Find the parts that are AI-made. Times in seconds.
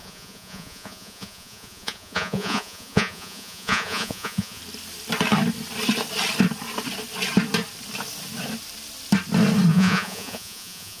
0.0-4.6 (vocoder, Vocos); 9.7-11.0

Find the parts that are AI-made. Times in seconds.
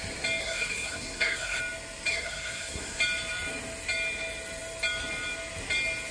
0.4-1.6 (codec, SNAC); 2.1-3.0